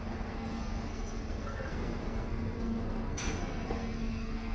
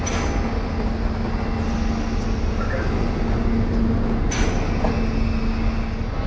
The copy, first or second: first